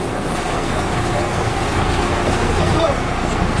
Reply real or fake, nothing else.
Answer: fake